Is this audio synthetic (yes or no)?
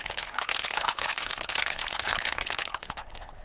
yes